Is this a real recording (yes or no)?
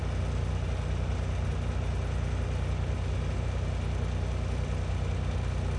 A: yes